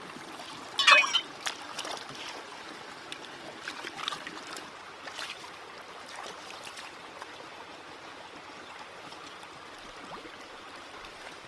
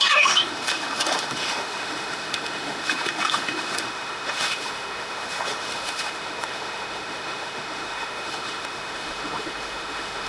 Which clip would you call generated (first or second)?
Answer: second